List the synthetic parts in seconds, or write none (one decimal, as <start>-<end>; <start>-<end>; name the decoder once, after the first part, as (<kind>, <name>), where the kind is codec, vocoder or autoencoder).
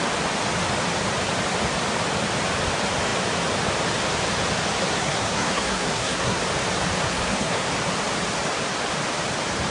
4.9-6.4 (codec, SNAC); 7.0-7.7